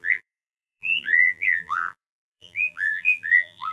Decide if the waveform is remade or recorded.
remade